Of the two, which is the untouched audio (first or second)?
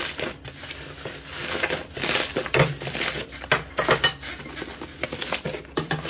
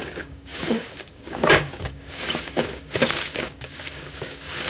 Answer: first